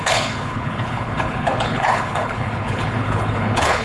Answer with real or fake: fake